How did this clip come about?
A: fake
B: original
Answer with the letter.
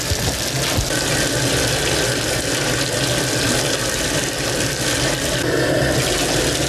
B